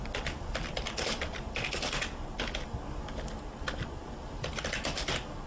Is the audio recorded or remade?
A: recorded